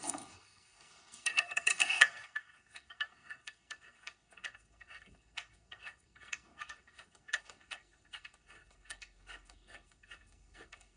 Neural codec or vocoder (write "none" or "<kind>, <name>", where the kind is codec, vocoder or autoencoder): codec, SNAC